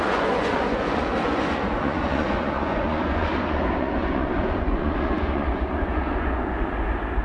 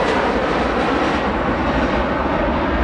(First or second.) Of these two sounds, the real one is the second